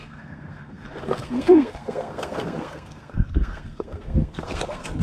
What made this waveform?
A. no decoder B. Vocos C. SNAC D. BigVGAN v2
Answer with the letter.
C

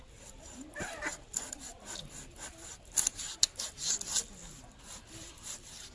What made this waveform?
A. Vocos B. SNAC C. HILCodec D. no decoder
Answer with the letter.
D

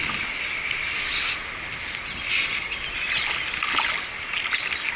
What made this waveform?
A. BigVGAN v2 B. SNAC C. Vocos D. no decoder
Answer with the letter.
D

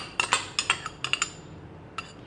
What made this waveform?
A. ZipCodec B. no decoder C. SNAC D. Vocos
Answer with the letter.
B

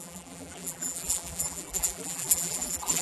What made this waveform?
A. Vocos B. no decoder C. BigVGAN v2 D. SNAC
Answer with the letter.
C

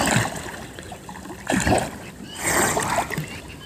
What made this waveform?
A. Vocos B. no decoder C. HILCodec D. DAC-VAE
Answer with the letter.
B